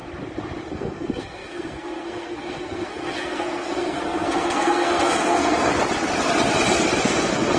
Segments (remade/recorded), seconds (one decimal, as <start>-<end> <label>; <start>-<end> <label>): 0.0-0.7 recorded; 0.7-5.7 remade; 5.7-7.0 recorded; 7.0-7.6 remade